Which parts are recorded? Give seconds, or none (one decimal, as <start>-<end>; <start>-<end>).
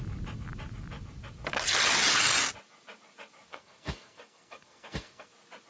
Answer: 0.0-3.5; 5.3-5.7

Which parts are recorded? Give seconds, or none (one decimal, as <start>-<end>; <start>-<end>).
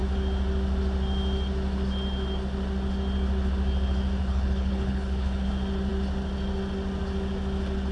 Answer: 0.0-4.2; 5.5-7.9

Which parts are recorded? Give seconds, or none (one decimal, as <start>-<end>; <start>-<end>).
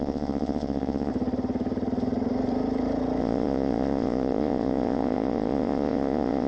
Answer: 1.1-3.2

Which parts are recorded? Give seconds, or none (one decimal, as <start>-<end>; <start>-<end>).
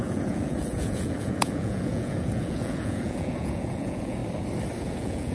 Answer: 4.2-4.8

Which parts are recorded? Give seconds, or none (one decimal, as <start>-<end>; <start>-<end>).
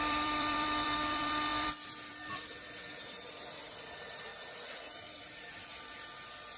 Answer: none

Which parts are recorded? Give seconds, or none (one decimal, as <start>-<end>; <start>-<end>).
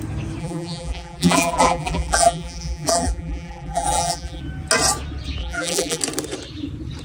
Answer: 0.0-0.4; 4.4-5.4; 6.0-7.0